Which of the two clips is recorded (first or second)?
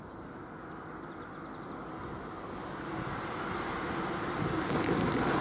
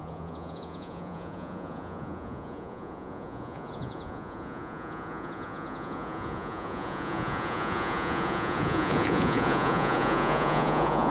first